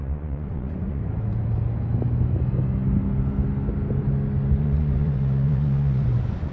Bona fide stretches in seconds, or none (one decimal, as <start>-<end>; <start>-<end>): 1.0-4.6